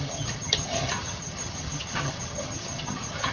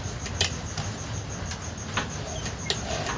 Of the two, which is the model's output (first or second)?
first